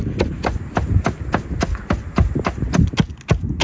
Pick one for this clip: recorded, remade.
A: recorded